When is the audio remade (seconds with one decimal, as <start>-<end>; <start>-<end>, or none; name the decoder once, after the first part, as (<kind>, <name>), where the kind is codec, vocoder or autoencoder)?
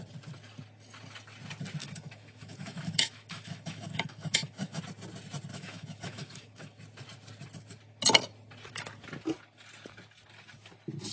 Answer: 1.8-4.8 (autoencoder, DAC-VAE); 5.5-6.8